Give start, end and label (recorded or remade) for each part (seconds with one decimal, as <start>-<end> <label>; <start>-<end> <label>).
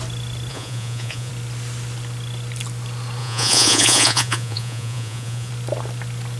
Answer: 0.0-0.5 recorded; 0.5-1.3 remade; 1.3-3.2 recorded; 3.2-5.5 remade; 5.5-6.4 recorded